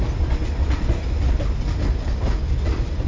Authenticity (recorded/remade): recorded